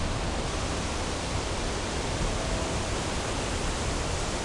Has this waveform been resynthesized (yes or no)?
no